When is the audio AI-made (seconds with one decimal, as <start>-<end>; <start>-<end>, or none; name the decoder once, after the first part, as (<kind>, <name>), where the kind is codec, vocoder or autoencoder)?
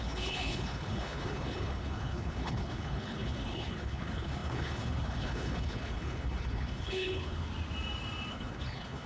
0.0-7.5 (codec, HILCodec); 8.3-9.1